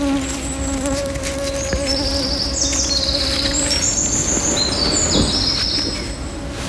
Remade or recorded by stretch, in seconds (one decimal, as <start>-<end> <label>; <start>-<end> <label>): 0.0-6.7 recorded